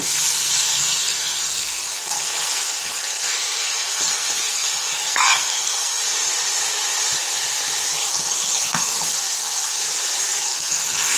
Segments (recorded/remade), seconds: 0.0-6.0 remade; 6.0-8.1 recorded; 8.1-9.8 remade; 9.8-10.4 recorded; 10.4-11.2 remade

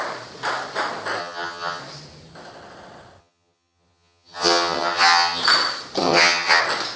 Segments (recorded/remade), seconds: 0.0-1.2 recorded; 1.2-1.8 remade; 1.8-3.2 recorded; 3.2-5.4 remade; 5.4-6.0 recorded; 6.0-6.6 remade; 6.6-7.0 recorded

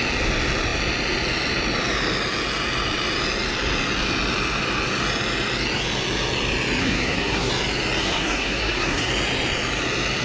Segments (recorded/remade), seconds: 0.0-6.8 recorded; 6.8-7.5 remade; 7.5-8.0 recorded; 8.0-9.1 remade; 9.1-10.2 recorded

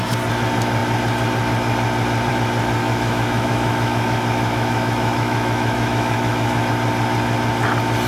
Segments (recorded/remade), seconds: 0.0-2.8 recorded; 2.8-6.7 remade; 6.7-8.1 recorded